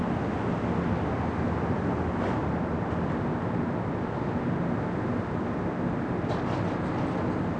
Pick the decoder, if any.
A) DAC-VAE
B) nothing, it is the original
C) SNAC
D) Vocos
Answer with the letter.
B